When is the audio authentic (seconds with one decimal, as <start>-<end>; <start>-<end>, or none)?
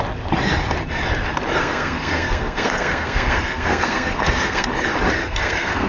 0.0-1.6; 4.7-5.2